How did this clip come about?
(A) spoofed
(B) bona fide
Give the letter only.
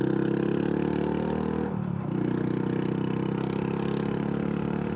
B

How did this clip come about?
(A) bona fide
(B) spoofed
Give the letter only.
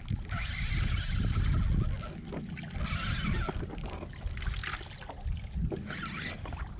A